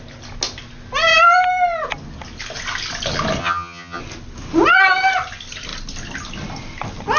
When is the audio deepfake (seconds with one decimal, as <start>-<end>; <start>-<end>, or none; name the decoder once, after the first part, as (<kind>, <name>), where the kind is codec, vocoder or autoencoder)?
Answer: 3.4-4.0 (vocoder, HiFi-GAN)